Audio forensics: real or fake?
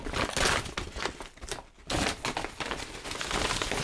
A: real